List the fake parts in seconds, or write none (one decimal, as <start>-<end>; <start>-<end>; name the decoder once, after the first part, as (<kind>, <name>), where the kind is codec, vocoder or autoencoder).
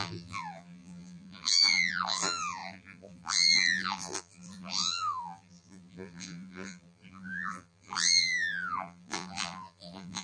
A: 0.0-10.2 (vocoder, BigVGAN v2)